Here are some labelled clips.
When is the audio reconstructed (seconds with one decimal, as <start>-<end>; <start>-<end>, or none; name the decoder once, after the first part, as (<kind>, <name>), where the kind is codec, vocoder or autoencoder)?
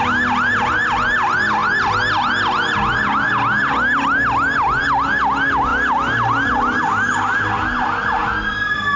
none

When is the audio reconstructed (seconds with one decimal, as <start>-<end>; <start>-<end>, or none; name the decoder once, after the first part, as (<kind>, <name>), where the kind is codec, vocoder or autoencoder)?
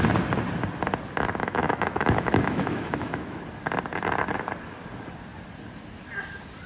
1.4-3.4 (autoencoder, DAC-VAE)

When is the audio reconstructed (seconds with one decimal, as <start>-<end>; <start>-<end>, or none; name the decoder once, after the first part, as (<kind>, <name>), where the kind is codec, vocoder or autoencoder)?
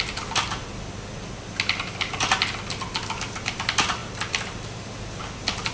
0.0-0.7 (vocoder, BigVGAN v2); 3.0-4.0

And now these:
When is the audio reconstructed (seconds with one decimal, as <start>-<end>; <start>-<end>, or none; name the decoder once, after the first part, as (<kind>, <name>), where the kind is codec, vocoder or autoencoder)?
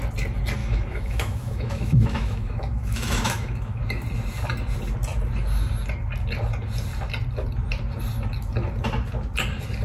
0.6-3.8 (autoencoder, DAC-VAE)